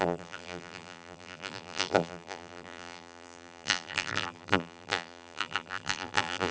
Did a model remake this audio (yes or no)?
yes